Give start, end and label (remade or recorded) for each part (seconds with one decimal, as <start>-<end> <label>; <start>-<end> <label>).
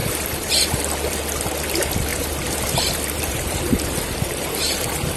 0.0-0.8 remade; 0.8-2.1 recorded; 2.1-5.2 remade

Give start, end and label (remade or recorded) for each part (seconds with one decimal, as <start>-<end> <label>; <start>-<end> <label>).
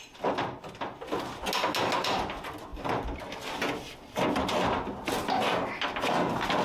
0.0-2.7 recorded; 2.7-3.2 remade; 3.2-6.6 recorded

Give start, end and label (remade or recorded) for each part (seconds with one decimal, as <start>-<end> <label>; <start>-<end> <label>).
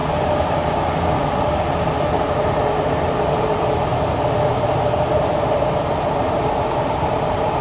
0.0-2.1 recorded; 2.1-3.9 remade; 3.9-4.5 recorded; 4.5-7.6 remade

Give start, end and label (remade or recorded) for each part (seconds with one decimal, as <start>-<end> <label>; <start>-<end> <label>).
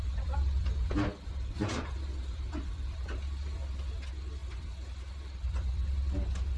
0.0-6.6 recorded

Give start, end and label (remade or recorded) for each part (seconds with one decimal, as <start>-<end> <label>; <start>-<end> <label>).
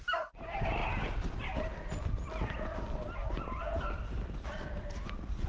0.0-0.8 remade; 0.8-3.8 recorded; 3.8-5.5 remade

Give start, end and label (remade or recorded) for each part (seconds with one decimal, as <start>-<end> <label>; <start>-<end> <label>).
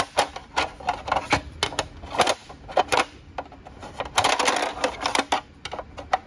0.0-0.4 recorded; 0.4-1.0 remade; 1.0-6.3 recorded